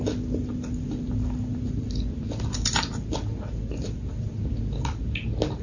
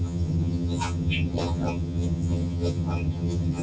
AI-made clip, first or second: second